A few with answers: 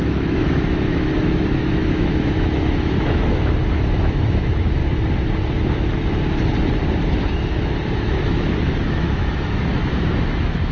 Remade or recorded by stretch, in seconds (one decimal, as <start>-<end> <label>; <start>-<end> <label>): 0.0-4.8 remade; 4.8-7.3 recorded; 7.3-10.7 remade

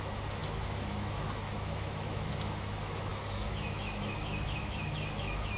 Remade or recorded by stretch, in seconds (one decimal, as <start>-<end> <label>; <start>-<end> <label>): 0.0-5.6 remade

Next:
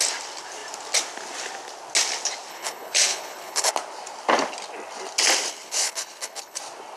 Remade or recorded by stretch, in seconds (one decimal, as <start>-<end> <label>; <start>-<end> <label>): 0.0-2.5 recorded; 2.5-3.7 remade; 3.7-5.5 recorded; 5.5-6.6 remade; 6.6-7.0 recorded